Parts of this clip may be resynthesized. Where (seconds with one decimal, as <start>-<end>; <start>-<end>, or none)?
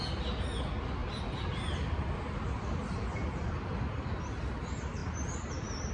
1.0-4.4; 5.0-5.9